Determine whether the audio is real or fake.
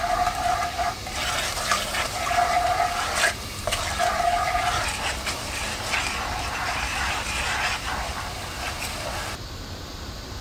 fake